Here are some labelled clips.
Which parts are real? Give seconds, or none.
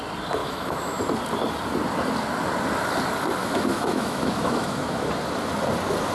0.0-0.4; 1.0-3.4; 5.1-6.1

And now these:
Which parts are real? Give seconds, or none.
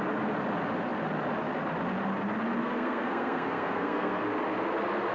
0.0-2.6; 4.2-5.1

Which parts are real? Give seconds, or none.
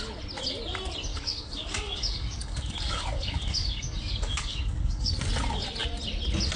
0.0-1.1; 5.1-6.6